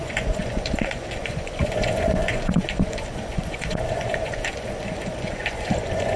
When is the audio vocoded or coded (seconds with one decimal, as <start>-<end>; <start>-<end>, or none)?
0.0-6.2